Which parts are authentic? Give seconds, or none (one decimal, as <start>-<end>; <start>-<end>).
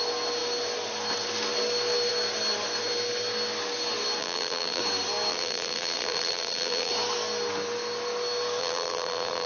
0.0-4.2; 4.8-5.3; 6.9-8.6